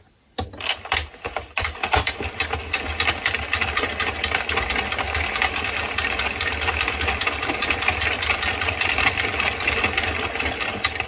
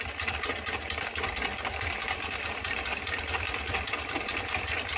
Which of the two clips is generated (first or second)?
second